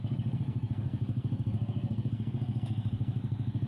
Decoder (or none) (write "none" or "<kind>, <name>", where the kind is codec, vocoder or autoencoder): codec, SNAC